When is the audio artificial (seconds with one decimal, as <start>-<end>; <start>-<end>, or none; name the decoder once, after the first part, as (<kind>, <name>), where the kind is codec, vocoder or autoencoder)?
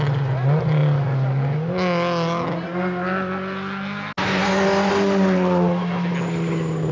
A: none